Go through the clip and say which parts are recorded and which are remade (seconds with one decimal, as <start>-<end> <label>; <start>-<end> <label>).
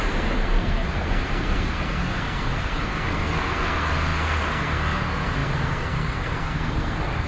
0.0-7.3 remade